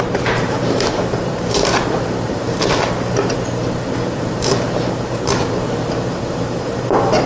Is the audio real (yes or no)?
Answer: no